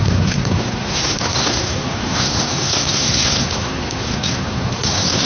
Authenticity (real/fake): fake